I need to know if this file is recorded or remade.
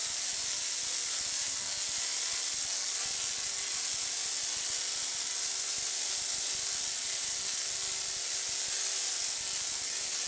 recorded